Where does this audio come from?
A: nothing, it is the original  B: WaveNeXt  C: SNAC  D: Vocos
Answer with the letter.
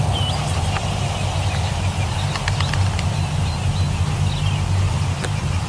A